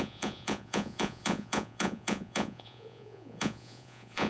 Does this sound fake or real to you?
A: fake